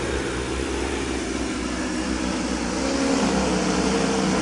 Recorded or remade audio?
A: recorded